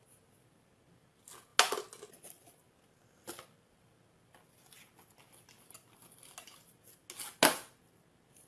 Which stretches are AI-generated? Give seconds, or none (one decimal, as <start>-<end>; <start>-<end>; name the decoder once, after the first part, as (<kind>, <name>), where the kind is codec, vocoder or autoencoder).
none